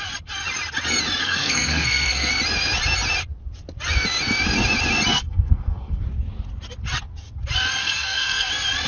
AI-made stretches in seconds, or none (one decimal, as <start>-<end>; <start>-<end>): 1.2-2.3; 5.1-6.0; 7.8-8.5